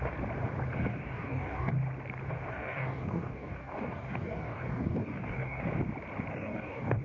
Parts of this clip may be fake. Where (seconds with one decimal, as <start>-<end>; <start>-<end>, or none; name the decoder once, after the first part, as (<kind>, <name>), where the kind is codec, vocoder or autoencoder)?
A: 0.9-1.7 (codec, DAC); 2.5-5.6; 6.3-7.0